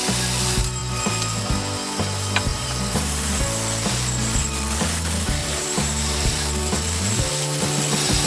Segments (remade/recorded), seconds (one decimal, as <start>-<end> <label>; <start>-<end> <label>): 0.0-2.5 recorded; 2.5-3.4 remade; 3.4-5.4 recorded; 5.4-7.3 remade; 7.3-8.3 recorded